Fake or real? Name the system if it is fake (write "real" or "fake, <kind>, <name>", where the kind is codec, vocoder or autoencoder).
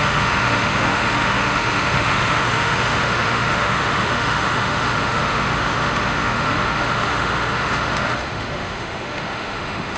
fake, autoencoder, DAC-VAE